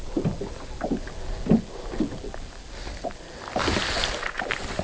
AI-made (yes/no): no